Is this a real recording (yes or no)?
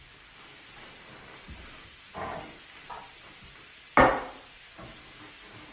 yes